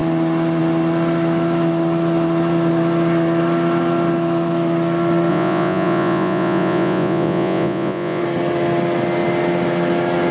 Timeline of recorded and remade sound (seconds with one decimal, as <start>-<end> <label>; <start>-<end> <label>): 0.0-5.3 recorded; 5.3-8.2 remade; 8.2-10.3 recorded

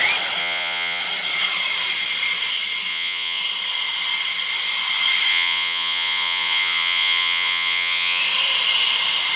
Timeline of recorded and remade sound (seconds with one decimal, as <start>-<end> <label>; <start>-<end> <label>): 0.0-0.4 recorded; 0.4-1.0 remade; 1.0-2.9 recorded; 2.9-3.4 remade; 3.4-5.3 recorded; 5.3-8.2 remade; 8.2-9.4 recorded

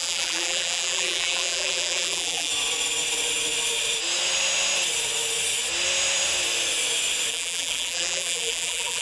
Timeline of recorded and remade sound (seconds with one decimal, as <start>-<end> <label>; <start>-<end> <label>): 0.0-2.5 remade; 2.5-7.3 recorded; 7.3-9.0 remade

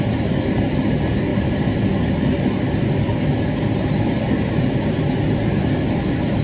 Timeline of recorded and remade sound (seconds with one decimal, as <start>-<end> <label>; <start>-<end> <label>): 0.0-6.4 recorded

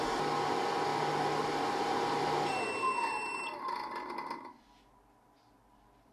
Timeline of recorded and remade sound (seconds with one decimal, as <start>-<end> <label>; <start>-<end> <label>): 0.0-6.1 recorded

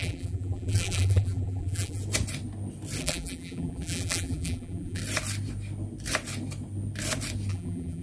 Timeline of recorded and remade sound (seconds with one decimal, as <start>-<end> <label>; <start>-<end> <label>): 0.0-2.0 remade; 2.0-3.0 recorded; 3.0-5.0 remade; 5.0-7.5 recorded; 7.5-8.0 remade